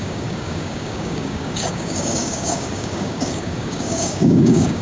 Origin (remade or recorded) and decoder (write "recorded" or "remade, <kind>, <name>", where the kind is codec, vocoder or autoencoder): remade, codec, DAC